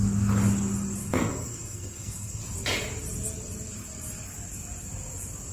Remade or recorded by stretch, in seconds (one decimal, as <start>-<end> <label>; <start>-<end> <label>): 0.0-1.0 recorded; 1.0-2.4 remade; 2.4-5.5 recorded